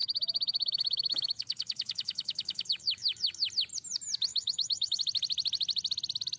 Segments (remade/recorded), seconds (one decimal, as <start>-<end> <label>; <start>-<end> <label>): 0.0-3.5 remade; 3.5-4.3 recorded; 4.3-5.0 remade; 5.0-6.4 recorded